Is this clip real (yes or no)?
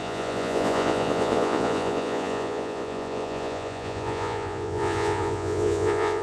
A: no